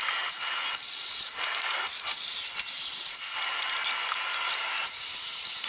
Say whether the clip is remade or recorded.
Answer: recorded